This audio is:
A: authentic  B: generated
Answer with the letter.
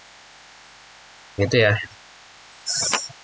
A